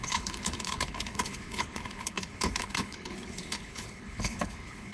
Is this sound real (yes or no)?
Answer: no